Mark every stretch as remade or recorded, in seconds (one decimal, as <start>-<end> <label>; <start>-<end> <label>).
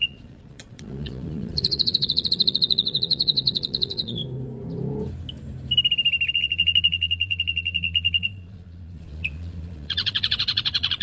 0.0-4.2 remade; 4.2-6.3 recorded; 6.3-11.0 remade